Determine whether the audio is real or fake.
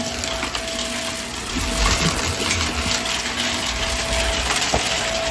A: real